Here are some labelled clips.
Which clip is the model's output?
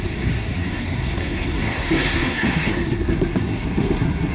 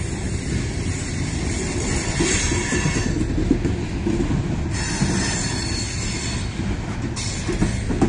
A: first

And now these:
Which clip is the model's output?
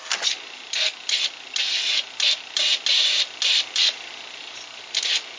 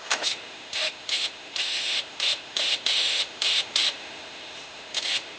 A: second